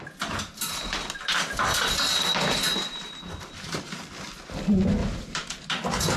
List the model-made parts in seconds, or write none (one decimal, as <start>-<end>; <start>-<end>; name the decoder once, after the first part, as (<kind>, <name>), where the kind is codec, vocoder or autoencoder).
2.4-4.1 (vocoder, BigVGAN v2); 5.0-5.7